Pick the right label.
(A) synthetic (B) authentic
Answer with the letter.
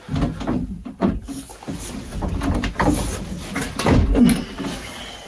B